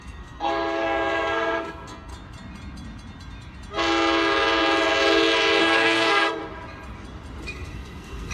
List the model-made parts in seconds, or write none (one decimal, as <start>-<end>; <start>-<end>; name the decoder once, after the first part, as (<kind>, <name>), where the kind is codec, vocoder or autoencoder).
0.0-2.1 (codec, SNAC); 5.6-6.4; 7.4-8.3